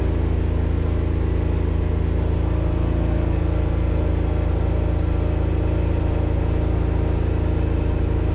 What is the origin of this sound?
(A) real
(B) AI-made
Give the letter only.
A